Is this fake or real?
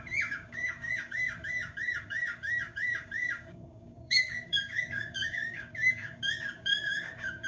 fake